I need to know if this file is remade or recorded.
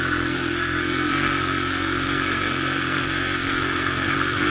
remade